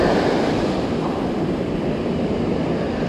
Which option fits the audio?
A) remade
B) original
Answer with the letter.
A